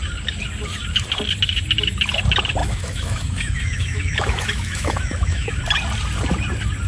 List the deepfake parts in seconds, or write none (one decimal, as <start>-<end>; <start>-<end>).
2.6-5.6